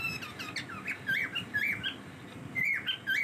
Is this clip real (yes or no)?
yes